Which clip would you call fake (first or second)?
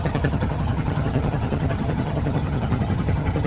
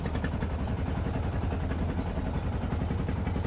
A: first